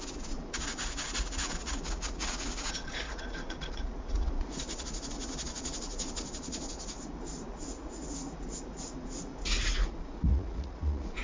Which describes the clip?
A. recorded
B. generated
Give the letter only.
B